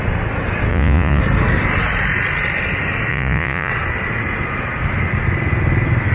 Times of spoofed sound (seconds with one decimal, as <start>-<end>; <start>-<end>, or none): 0.7-1.2; 3.1-3.7